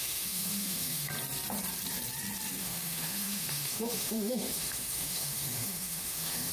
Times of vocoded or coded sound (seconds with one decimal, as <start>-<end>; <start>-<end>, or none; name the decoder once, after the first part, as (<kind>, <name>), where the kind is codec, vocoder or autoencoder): 0.0-1.1 (autoencoder, DAC-VAE); 2.6-6.5